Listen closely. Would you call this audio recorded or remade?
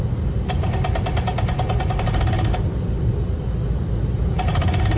recorded